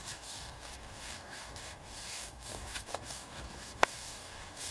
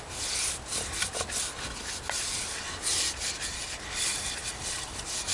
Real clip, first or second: second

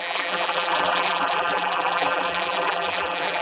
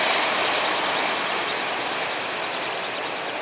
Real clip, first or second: second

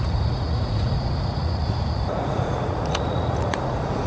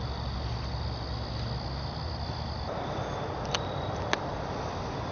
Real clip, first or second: second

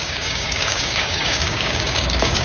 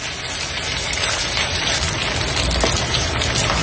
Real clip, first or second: second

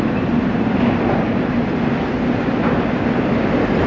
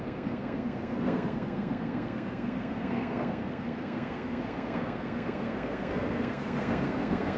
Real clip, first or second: first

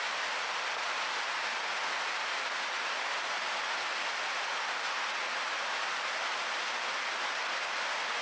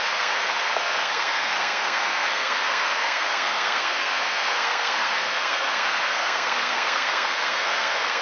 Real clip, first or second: first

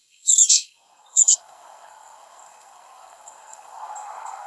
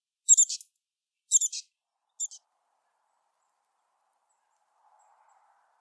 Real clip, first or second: second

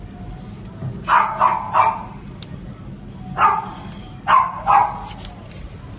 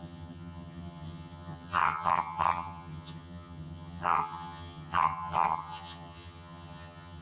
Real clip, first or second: first